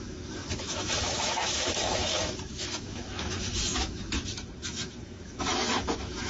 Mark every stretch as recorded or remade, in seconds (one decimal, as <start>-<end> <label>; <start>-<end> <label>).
0.0-6.3 remade